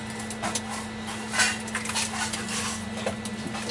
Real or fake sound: real